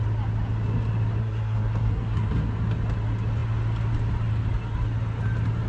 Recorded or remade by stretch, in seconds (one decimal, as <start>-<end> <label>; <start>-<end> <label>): 0.0-1.2 recorded; 1.2-2.5 remade; 2.5-5.7 recorded